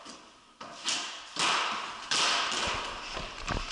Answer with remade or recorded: recorded